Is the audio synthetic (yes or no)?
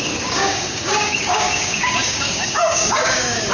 yes